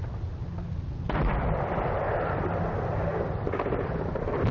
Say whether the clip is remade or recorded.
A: recorded